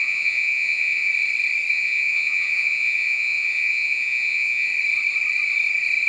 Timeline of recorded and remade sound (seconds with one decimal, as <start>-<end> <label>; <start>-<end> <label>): 0.0-1.1 remade; 1.1-1.7 recorded; 1.7-4.7 remade; 4.7-6.1 recorded